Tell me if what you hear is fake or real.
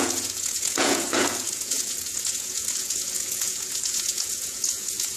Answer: fake